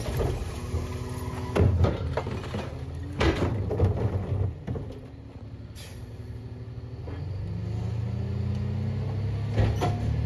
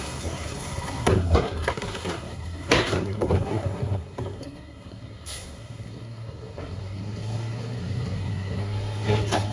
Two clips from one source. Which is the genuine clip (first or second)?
first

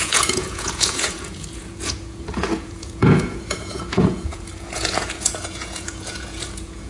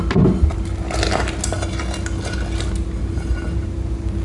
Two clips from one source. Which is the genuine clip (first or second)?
second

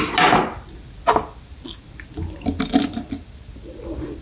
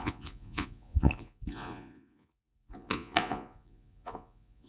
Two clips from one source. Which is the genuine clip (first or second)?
first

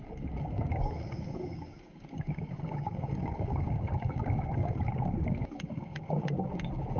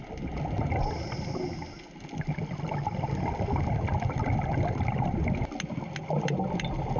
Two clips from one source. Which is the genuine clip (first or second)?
second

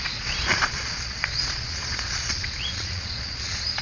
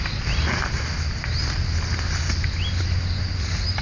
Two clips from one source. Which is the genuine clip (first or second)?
second